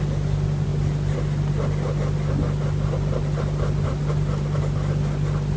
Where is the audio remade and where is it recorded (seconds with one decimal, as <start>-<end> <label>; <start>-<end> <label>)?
0.0-5.6 recorded